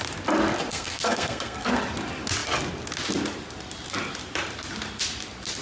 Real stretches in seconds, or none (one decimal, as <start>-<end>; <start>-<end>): 0.0-0.7; 1.8-5.6